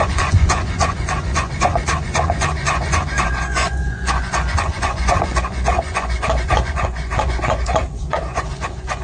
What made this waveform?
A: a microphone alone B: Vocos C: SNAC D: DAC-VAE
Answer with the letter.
B